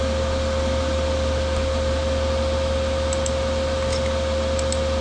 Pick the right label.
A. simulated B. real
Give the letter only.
B